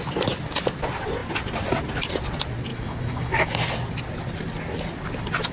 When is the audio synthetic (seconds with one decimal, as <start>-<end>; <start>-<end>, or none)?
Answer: 2.7-3.5

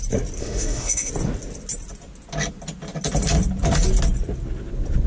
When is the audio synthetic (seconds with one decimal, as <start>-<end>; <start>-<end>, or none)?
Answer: 0.4-1.1

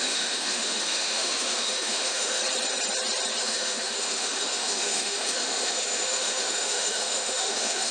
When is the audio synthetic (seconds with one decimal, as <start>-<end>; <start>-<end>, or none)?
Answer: 0.0-2.4; 3.4-7.9